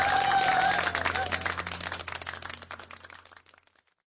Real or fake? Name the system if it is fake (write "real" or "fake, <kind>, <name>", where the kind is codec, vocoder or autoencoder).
real